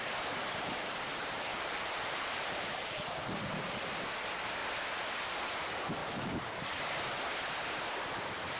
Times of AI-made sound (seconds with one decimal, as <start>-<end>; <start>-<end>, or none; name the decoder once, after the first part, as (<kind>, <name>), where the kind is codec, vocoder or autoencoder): 0.4-0.9 (vocoder, BigVGAN v2); 1.5-3.7